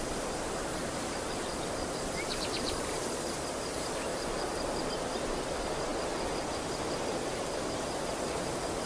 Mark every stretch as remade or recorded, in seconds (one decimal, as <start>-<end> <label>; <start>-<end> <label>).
0.0-0.7 recorded; 0.7-3.0 remade; 3.0-4.1 recorded; 4.1-4.9 remade; 4.9-8.9 recorded